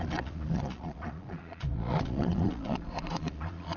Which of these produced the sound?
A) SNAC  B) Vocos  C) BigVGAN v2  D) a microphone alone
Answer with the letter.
B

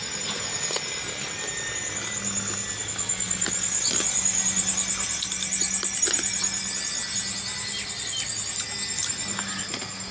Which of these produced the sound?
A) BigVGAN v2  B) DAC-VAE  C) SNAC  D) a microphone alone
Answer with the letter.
D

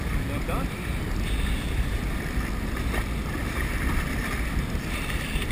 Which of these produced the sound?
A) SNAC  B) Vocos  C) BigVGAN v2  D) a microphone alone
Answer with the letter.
D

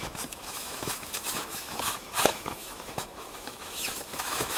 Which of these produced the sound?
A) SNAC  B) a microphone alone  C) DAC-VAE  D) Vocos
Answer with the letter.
C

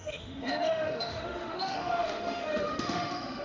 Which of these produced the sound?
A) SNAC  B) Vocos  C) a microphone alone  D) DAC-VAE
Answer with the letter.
D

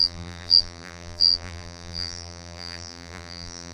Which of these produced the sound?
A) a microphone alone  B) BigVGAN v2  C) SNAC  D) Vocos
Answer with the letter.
B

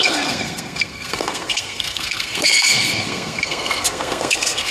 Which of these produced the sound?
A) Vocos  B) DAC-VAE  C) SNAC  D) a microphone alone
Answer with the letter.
C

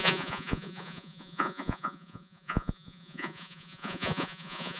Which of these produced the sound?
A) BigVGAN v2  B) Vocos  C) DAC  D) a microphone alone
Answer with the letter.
B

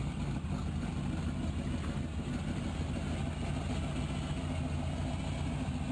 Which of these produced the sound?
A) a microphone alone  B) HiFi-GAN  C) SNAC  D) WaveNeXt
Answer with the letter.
A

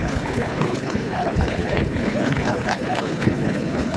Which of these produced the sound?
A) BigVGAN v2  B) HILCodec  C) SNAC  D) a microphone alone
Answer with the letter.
B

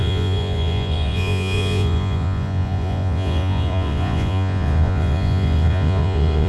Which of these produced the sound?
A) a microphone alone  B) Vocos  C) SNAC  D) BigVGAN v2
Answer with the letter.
B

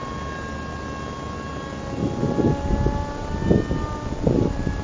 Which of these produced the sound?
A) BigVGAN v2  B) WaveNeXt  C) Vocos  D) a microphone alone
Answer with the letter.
D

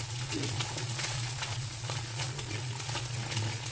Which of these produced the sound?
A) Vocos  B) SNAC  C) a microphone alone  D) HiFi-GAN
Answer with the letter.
A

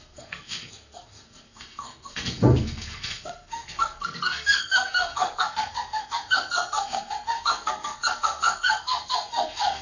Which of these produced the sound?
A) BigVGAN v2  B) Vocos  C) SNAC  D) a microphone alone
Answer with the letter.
C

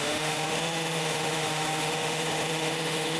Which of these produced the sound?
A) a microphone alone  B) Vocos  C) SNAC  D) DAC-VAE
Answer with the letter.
D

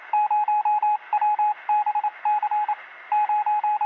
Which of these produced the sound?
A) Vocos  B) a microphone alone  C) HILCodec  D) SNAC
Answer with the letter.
B